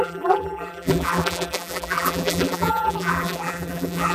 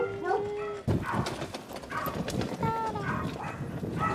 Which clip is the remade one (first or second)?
first